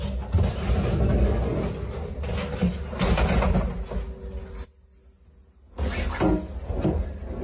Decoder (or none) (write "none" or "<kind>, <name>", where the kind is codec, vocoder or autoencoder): none